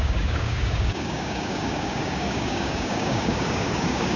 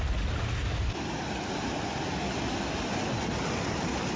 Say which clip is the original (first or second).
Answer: second